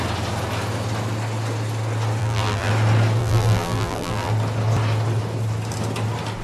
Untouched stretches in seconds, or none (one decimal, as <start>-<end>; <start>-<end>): 0.0-2.2; 2.7-3.2; 4.3-6.4